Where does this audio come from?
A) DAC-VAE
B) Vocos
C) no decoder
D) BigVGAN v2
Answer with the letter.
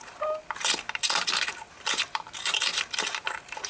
C